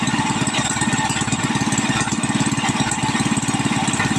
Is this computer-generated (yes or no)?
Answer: no